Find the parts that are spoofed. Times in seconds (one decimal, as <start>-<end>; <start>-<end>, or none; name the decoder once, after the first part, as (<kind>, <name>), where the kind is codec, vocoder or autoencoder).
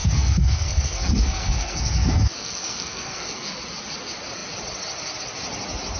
0.0-3.6 (codec, SNAC)